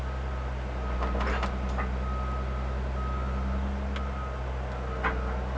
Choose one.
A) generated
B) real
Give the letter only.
B